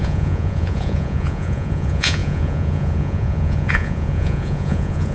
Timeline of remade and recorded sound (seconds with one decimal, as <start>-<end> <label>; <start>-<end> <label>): 0.0-5.1 remade